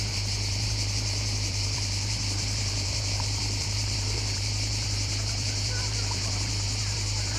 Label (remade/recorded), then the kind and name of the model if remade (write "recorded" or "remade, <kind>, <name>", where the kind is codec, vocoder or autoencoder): remade, vocoder, BigVGAN v2